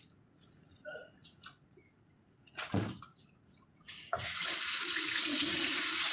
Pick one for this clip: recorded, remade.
remade